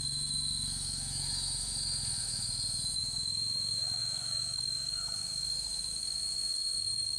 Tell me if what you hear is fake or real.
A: fake